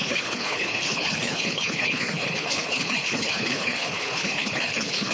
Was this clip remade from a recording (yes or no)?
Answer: yes